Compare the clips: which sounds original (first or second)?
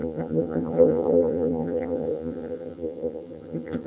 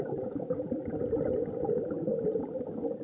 second